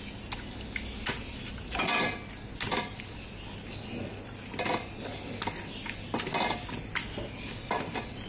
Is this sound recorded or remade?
recorded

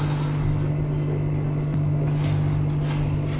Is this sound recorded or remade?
recorded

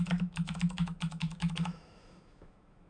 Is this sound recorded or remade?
remade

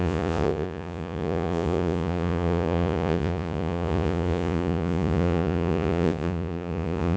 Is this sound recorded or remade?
remade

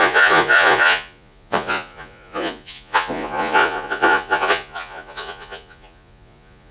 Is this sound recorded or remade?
remade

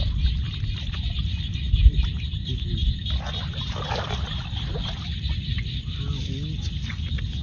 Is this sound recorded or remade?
recorded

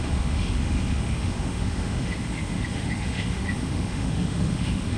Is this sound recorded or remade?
remade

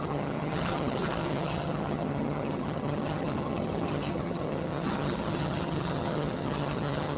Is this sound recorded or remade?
remade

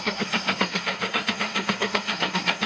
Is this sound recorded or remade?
remade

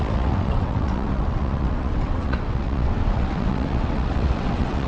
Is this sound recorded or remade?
remade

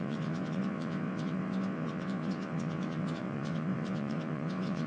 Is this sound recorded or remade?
remade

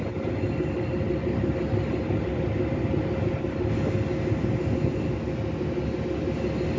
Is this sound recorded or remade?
recorded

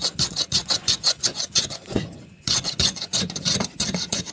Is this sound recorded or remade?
remade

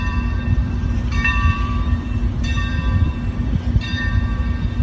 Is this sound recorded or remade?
remade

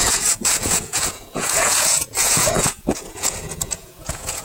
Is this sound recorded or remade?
remade